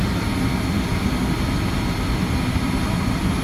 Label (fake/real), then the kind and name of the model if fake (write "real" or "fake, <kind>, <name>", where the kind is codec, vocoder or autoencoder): real